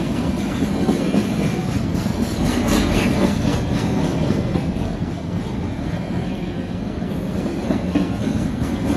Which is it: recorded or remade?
remade